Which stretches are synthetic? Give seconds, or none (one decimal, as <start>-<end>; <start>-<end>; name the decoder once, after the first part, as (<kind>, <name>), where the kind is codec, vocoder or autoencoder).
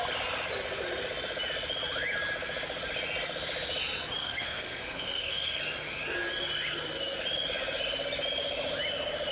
4.2-5.6 (codec, SNAC)